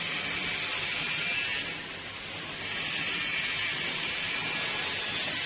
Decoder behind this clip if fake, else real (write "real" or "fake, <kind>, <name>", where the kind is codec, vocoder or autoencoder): real